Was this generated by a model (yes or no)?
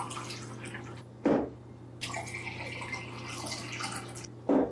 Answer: no